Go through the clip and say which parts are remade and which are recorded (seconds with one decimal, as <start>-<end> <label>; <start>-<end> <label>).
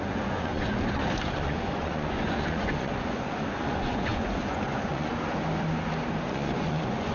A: 0.0-5.1 remade; 5.1-6.3 recorded; 6.3-7.1 remade